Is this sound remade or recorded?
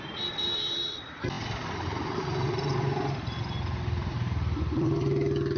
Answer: remade